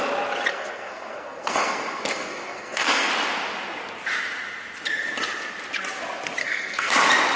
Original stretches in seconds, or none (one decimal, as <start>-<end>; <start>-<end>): 0.0-0.5; 3.1-6.4; 6.9-7.4